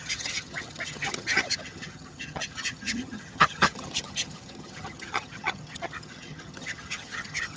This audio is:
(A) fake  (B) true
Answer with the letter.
A